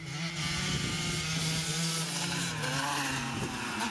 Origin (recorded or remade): recorded